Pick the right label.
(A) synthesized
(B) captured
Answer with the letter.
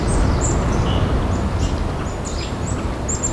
B